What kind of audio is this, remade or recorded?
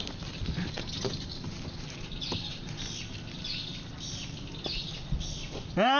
recorded